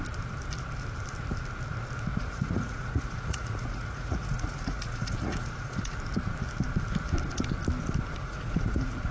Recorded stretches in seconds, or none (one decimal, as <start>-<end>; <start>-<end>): 0.0-2.1; 6.0-8.2